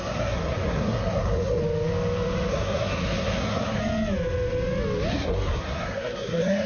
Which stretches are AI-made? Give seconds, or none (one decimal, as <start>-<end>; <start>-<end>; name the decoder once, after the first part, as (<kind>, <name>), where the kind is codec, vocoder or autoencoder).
0.0-1.6 (codec, SNAC); 2.5-3.8; 5.1-6.7